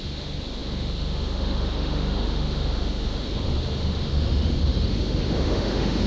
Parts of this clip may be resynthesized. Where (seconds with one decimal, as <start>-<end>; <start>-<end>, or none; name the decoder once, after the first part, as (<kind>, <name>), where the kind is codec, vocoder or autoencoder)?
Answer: 0.0-6.1 (autoencoder, DAC-VAE)